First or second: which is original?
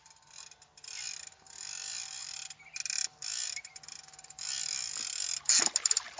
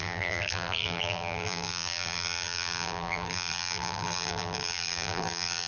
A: first